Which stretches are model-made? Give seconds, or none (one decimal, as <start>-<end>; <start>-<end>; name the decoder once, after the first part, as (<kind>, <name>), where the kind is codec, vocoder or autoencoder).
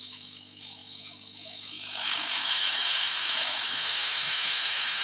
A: 0.0-5.0 (autoencoder, DAC-VAE)